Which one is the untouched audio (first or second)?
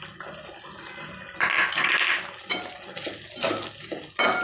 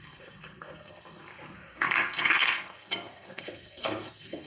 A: first